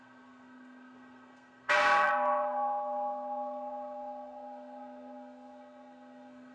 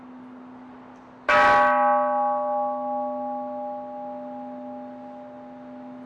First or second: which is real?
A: second